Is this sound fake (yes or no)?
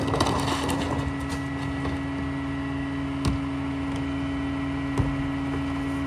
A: no